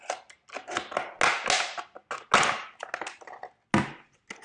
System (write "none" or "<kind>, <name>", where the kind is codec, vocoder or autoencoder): none